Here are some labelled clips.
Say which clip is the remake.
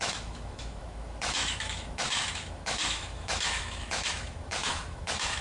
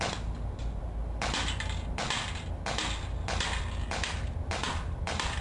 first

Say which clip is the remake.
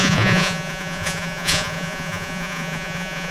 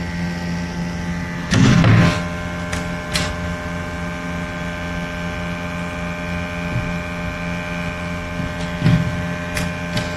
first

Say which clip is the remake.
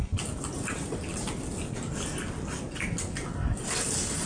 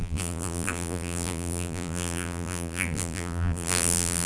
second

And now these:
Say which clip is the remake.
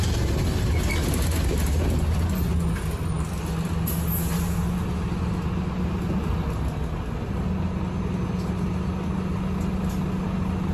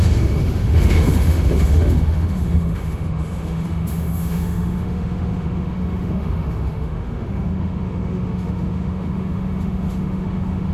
second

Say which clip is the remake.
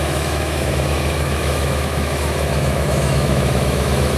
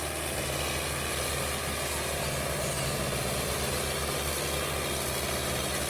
first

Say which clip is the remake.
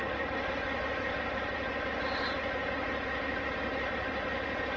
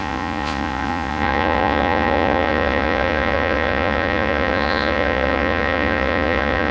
second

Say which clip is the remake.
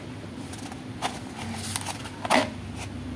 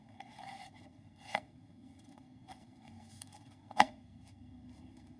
second